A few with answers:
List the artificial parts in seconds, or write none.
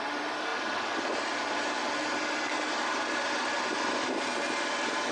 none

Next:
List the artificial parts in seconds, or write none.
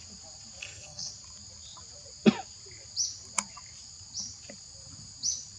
0.6-1.1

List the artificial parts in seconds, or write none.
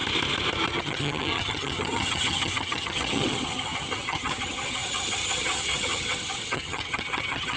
0.8-7.6